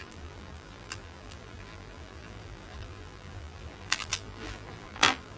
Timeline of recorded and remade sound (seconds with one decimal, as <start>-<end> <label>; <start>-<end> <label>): 0.0-5.4 remade